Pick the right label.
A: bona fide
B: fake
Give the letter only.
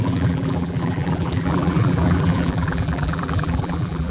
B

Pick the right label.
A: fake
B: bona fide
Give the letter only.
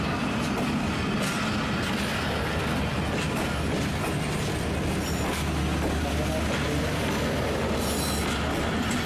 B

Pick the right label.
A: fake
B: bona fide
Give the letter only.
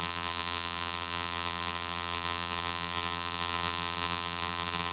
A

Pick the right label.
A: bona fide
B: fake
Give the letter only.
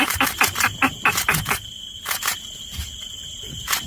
A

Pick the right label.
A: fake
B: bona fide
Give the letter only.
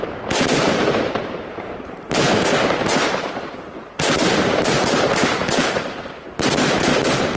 A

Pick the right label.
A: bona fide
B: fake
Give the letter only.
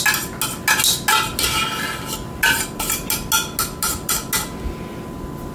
A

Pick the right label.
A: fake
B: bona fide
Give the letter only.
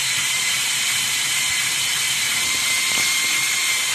A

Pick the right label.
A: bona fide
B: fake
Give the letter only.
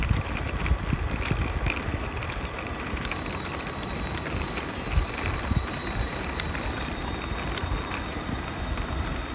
B